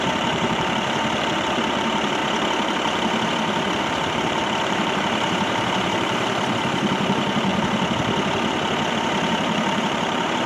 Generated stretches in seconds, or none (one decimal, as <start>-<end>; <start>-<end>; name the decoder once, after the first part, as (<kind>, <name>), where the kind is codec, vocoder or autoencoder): 0.0-2.2 (vocoder, BigVGAN v2); 3.8-7.5; 8.9-10.5